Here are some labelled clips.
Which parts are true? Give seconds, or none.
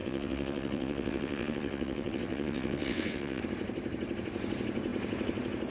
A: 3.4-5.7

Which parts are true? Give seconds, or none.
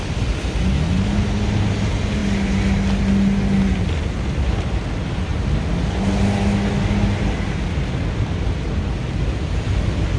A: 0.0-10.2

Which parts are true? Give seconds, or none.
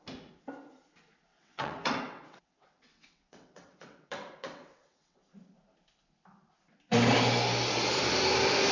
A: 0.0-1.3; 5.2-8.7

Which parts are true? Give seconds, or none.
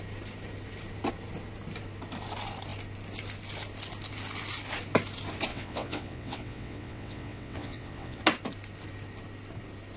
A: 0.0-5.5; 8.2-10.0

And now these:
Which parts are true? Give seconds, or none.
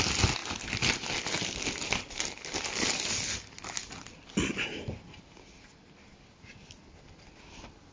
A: 0.0-7.9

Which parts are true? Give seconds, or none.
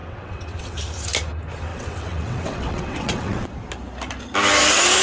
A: 0.8-1.7; 3.5-5.0